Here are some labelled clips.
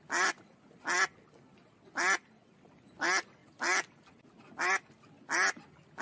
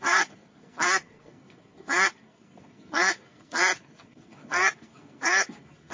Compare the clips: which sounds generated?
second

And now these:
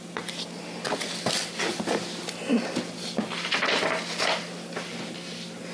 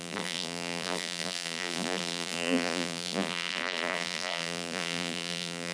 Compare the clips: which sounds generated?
second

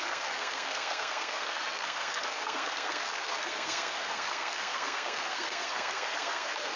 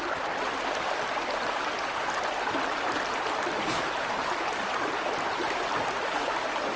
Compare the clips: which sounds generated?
first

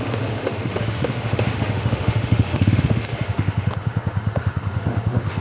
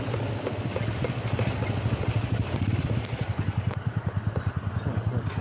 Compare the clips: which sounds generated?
first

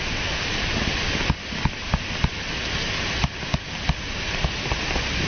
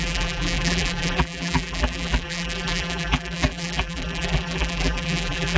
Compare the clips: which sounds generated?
second